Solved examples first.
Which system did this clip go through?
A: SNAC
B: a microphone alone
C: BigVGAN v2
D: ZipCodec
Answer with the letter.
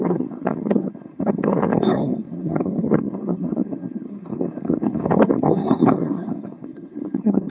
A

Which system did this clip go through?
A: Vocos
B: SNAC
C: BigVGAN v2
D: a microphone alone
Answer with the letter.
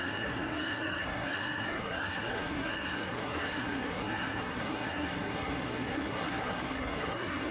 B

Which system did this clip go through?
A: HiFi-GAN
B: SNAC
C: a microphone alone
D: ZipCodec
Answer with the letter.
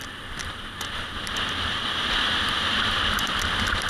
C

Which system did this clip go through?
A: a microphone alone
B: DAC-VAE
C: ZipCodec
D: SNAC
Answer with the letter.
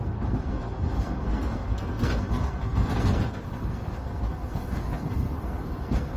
D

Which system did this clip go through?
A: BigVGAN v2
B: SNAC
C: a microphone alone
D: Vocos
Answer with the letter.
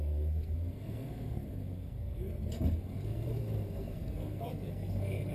B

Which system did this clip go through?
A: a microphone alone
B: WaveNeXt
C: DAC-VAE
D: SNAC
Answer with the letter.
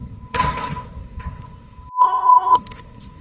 D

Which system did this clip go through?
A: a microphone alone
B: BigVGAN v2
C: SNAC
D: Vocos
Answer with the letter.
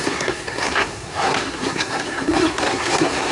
C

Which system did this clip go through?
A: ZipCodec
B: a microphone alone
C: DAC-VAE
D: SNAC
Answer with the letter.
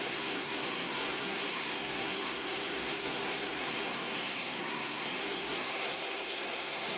D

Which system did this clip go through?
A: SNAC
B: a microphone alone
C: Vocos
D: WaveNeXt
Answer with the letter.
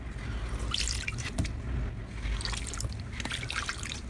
B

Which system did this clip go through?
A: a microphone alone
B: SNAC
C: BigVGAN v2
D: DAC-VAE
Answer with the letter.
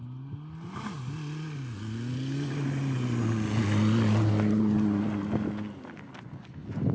A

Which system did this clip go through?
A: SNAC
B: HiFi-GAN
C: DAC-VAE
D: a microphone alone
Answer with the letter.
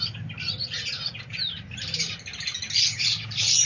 D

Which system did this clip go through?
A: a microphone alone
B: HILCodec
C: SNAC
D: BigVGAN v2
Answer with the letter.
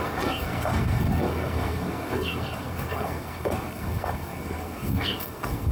C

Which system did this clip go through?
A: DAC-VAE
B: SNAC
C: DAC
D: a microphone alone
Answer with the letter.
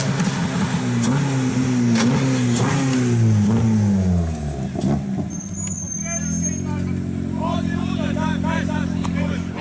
D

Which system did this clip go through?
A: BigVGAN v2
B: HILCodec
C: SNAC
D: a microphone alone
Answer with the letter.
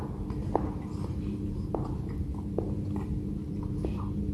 D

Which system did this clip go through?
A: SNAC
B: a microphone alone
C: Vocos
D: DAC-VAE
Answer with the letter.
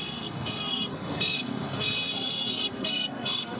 A